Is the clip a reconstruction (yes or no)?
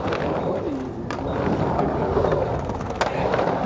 no